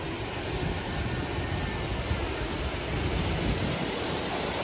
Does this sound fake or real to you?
real